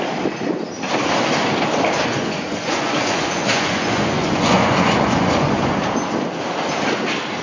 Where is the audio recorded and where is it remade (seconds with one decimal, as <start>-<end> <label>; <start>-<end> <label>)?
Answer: 0.0-2.1 recorded; 2.1-5.8 remade; 5.8-7.4 recorded